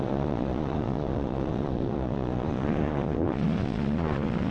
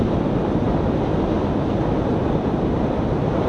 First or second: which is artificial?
first